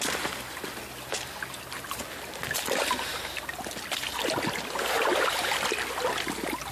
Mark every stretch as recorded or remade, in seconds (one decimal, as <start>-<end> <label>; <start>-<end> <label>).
0.0-6.7 recorded